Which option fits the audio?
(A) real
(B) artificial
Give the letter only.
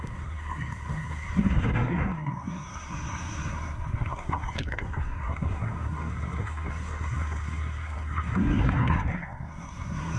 B